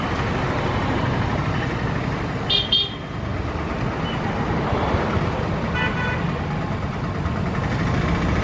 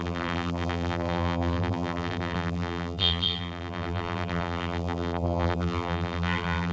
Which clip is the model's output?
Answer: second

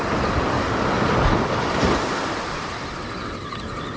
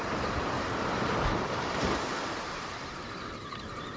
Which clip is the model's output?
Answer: second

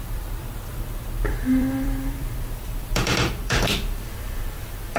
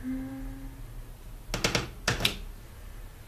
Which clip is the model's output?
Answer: first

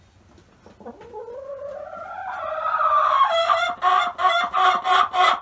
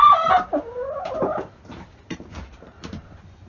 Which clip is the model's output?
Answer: second